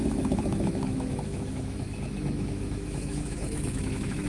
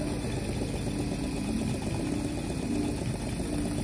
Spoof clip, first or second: first